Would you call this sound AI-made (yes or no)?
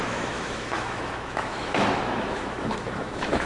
yes